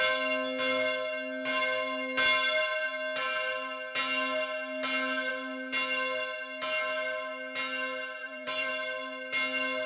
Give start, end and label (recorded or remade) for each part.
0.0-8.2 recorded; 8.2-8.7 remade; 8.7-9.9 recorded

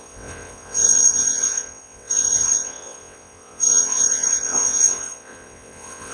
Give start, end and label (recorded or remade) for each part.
0.0-6.1 remade

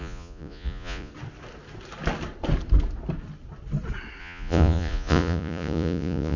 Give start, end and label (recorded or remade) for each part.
0.0-1.1 remade; 1.1-4.2 recorded; 4.2-6.4 remade